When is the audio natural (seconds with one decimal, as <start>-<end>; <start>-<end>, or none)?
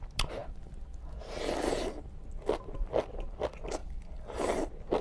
0.0-3.8